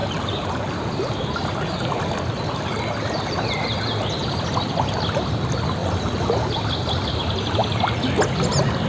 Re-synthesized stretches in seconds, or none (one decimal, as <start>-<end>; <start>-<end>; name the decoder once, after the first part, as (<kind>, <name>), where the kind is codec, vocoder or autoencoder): 0.0-1.2 (vocoder, BigVGAN v2); 5.8-7.1